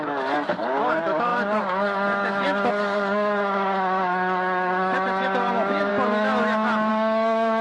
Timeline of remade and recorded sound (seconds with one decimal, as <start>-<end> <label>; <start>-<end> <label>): 0.0-5.9 remade; 5.9-6.9 recorded; 6.9-7.6 remade